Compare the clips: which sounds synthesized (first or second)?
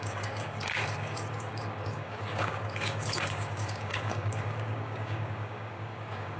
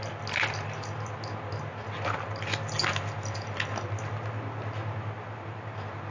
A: first